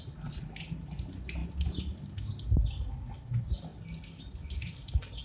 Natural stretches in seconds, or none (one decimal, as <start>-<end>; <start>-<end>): 0.0-5.2